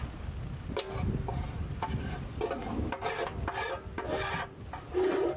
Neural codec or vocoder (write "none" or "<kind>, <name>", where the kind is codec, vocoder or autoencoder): none